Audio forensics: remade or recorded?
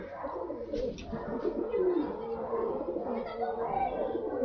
recorded